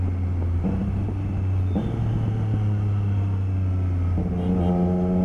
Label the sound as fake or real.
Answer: real